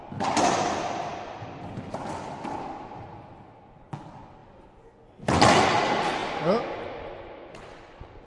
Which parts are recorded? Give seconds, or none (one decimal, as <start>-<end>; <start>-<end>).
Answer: 0.0-8.3

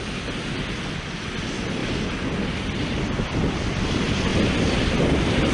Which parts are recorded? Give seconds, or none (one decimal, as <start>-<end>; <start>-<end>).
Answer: 0.0-1.8; 3.0-4.3

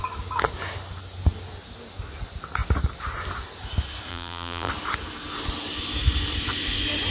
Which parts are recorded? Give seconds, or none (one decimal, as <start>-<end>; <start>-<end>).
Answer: 0.0-4.1; 4.7-7.1